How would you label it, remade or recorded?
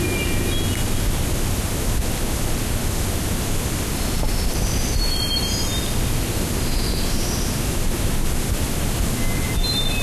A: recorded